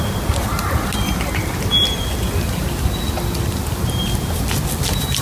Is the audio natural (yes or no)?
yes